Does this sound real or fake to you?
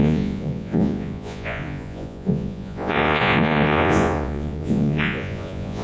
fake